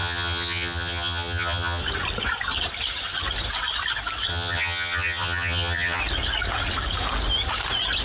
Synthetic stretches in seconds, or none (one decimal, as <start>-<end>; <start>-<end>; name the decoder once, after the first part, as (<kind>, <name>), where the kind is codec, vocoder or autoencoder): 0.0-1.8 (vocoder, HiFi-GAN); 4.3-6.0